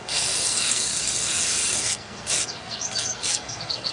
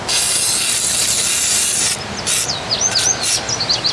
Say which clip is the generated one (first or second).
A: first